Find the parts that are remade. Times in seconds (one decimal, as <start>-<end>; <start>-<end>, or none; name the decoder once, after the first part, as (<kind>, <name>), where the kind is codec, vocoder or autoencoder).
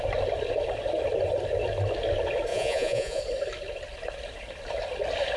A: 2.5-3.2 (vocoder, Vocos)